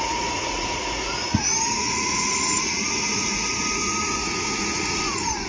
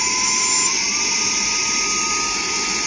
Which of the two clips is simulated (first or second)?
first